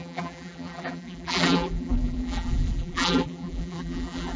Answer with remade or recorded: remade